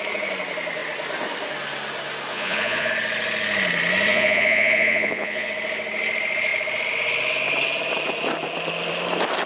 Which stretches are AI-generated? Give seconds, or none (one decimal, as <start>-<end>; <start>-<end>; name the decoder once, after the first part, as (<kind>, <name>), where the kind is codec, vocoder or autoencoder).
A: 2.3-2.9 (vocoder, Vocos); 4.1-5.5